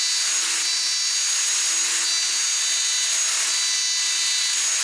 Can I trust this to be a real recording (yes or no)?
yes